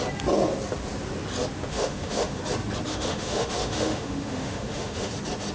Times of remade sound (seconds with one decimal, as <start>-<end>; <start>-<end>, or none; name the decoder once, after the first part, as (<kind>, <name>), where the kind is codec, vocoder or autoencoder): 1.7-2.4 (autoencoder, DAC-VAE); 2.9-5.1